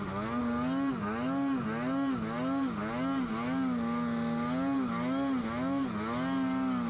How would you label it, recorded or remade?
recorded